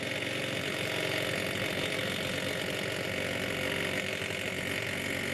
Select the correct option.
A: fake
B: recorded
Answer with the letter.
B